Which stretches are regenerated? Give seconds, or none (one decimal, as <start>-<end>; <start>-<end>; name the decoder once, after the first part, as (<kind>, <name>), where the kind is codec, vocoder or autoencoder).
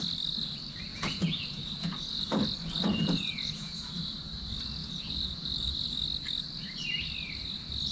0.9-3.9 (vocoder, Vocos); 4.8-5.7